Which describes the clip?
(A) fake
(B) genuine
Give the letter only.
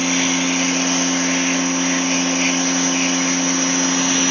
B